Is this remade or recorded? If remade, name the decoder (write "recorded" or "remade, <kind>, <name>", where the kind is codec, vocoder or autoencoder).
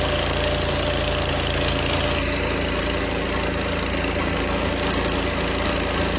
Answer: recorded